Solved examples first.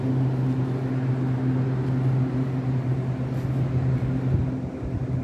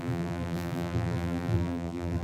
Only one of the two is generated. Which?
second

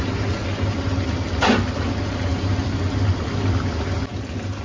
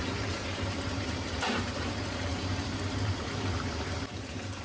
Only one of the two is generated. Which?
second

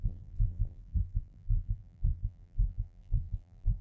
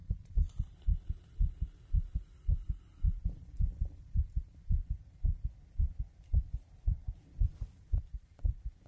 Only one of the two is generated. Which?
first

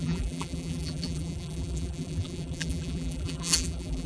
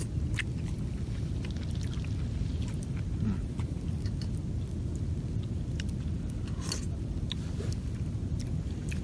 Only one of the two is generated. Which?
first